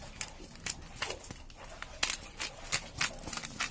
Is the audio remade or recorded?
recorded